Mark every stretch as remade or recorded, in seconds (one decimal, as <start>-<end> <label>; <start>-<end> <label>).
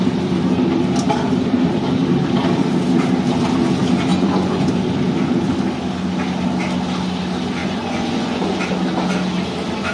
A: 0.0-4.1 recorded; 4.1-4.7 remade; 4.7-7.6 recorded; 7.6-8.6 remade; 8.6-9.9 recorded